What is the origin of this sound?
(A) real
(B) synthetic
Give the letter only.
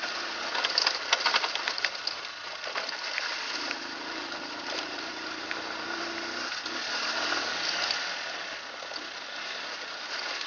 A